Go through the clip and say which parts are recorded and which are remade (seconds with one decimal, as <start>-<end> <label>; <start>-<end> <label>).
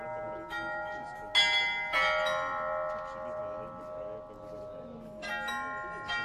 0.0-6.2 recorded